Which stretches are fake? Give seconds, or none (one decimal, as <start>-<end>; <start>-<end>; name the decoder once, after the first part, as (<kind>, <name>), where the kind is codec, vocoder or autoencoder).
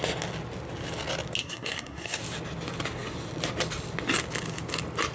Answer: 1.4-2.2 (codec, SNAC)